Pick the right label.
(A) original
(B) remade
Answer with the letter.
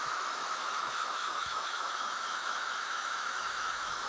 B